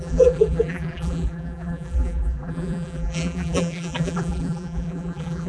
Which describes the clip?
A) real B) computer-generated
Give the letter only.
B